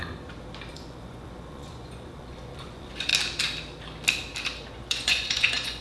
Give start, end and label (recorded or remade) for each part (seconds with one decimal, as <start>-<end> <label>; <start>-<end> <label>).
0.0-0.7 recorded; 0.7-3.1 remade; 3.1-4.7 recorded; 4.7-5.8 remade